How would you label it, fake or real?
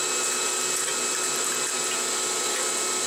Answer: real